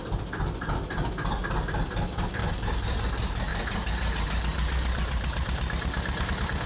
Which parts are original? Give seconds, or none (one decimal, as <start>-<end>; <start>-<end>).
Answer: 0.0-2.4; 3.0-3.5; 6.3-6.7